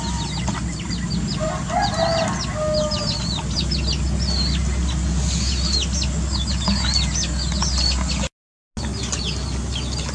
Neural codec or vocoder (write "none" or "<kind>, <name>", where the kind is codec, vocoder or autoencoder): none